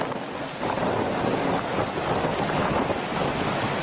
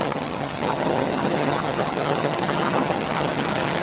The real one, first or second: first